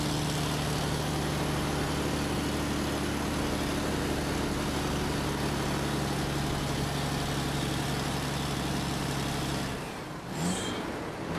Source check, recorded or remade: recorded